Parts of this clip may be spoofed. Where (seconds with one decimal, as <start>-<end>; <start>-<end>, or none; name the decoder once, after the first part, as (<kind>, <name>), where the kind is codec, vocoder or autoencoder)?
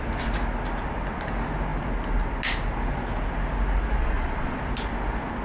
4.0-4.6 (vocoder, Vocos)